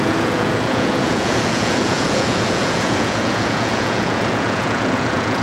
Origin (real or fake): fake